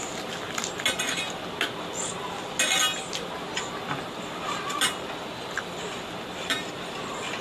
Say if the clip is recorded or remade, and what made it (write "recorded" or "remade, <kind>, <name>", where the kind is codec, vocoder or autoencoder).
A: recorded